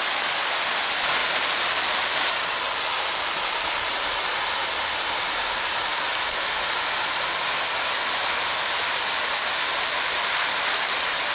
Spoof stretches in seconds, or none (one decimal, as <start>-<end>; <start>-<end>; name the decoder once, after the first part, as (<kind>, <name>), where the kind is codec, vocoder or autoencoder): 1.2-4.6 (vocoder, BigVGAN v2); 9.7-10.4

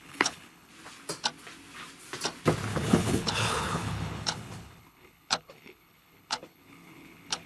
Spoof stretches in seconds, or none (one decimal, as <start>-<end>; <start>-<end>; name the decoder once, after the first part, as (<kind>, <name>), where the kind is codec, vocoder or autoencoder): 0.0-0.7 (codec, HILCodec); 2.7-7.5

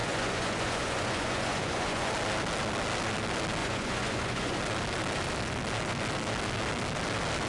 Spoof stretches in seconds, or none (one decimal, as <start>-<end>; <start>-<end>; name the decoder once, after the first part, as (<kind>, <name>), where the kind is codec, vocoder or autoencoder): 0.0-2.1 (vocoder, Vocos); 3.6-4.6

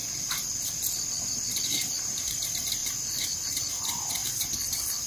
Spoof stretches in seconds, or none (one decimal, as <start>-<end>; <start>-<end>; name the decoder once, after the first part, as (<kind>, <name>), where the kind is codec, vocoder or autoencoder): 2.8-3.7 (vocoder, BigVGAN v2); 4.2-5.1

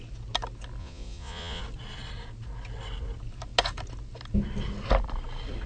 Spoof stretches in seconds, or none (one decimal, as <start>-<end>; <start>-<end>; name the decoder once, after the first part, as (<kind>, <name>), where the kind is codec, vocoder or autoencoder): 0.8-1.6 (vocoder, Vocos)

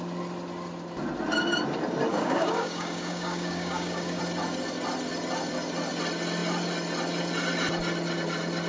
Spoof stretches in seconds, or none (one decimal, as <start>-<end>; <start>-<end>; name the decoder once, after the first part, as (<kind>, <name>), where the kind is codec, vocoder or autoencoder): 2.1-4.2 (codec, DAC)